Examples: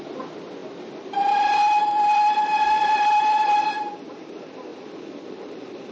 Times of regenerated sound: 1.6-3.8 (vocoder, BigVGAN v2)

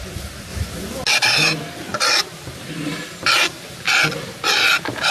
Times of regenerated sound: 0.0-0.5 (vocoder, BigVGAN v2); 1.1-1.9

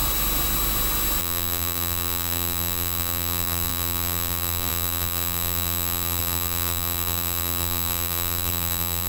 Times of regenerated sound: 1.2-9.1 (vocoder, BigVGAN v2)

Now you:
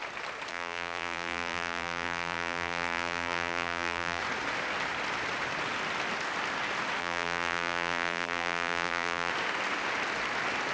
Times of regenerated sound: 0.5-4.2 (vocoder, BigVGAN v2); 7.0-9.3

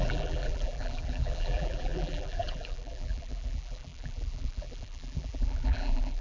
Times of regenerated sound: 0.0-6.2 (vocoder, BigVGAN v2)